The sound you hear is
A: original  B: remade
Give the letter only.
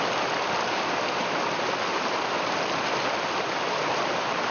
A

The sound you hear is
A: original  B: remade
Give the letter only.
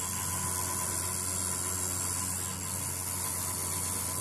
A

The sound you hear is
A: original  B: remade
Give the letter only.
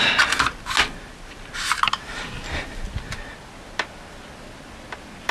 A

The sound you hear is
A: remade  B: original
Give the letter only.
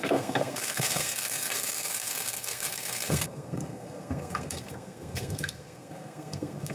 A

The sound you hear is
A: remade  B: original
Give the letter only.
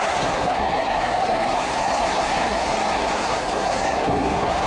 A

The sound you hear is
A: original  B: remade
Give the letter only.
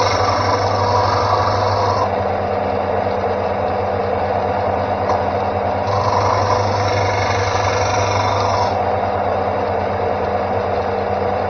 A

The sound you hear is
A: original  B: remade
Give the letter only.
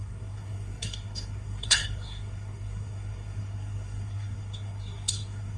B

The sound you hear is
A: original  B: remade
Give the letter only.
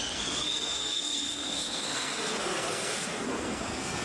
B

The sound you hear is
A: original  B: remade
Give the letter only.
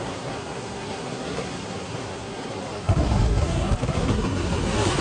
B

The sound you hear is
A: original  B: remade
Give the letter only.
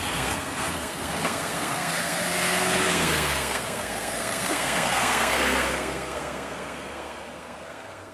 B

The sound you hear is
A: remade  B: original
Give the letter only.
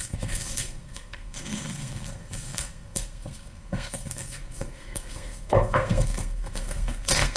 A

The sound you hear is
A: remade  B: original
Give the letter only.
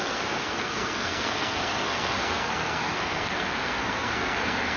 A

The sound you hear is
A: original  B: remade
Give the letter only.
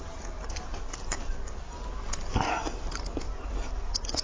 A